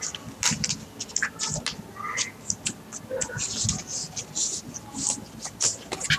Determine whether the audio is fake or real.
real